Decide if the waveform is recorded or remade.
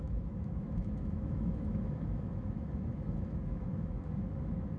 remade